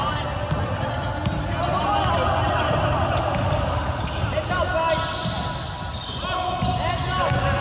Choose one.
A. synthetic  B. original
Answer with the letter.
B